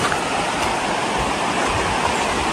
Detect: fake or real real